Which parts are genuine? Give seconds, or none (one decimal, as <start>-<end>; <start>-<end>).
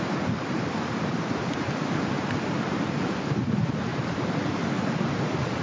0.0-5.6